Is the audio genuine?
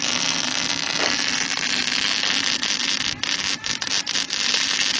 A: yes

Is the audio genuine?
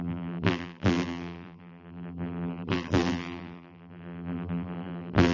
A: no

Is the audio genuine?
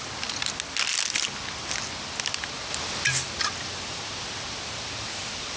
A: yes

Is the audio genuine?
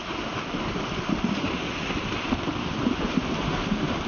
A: yes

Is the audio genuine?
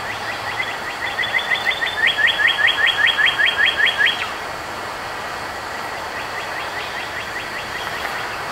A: yes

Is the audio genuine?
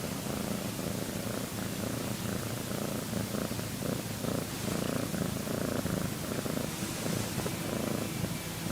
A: yes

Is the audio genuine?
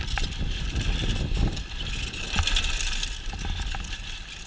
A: yes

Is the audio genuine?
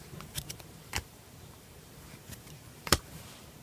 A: no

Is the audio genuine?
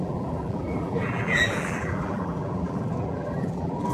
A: no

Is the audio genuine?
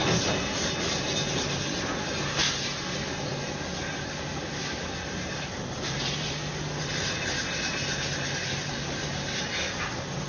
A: yes